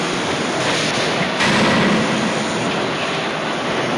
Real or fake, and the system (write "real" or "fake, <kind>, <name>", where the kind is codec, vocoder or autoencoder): real